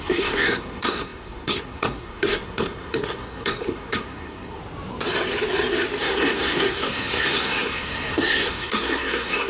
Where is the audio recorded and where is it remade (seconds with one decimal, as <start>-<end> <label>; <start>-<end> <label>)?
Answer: 0.0-4.6 remade; 4.6-6.0 recorded; 6.0-9.5 remade